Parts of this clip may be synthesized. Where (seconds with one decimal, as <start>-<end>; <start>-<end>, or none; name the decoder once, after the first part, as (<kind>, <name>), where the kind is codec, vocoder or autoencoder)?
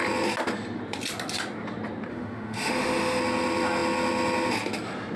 2.1-3.2 (autoencoder, DAC-VAE)